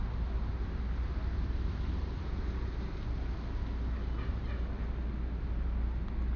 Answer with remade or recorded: recorded